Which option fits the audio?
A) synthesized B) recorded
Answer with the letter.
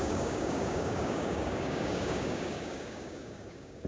A